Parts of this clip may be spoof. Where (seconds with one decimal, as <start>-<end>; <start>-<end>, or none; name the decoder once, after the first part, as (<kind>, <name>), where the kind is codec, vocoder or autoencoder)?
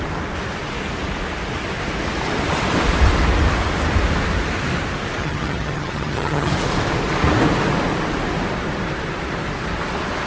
5.2-6.5 (vocoder, HiFi-GAN)